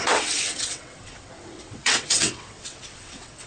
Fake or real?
fake